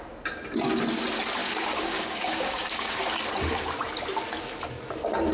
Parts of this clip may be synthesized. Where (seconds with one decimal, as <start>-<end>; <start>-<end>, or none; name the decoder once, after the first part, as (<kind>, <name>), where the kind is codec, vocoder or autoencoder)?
1.4-3.0 (codec, DAC)